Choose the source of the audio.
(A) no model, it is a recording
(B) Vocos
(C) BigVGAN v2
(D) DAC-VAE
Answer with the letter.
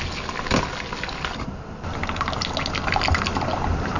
A